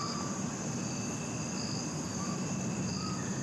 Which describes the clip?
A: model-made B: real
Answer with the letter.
B